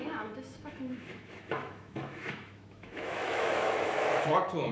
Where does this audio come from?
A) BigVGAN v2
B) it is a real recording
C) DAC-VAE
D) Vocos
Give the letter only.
C